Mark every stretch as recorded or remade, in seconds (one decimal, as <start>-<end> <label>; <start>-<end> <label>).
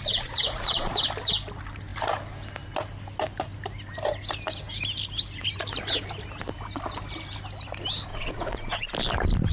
0.0-0.9 remade; 0.9-8.1 recorded; 8.1-8.9 remade; 8.9-9.5 recorded